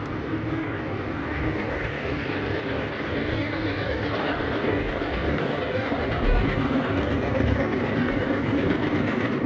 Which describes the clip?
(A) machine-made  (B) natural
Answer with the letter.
A